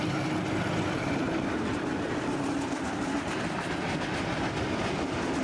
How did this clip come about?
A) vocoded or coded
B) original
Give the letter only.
B